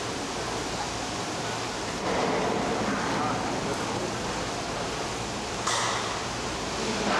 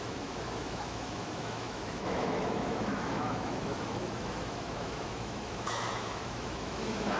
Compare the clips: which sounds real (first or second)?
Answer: first